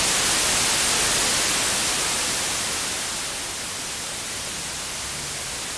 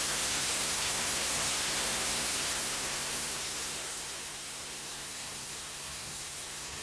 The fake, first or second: second